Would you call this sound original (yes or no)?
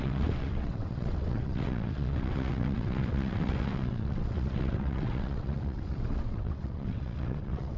no